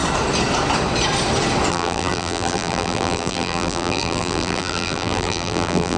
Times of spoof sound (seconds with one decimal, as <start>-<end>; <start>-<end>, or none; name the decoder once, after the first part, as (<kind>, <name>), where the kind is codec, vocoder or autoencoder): 1.7-6.0 (vocoder, BigVGAN v2)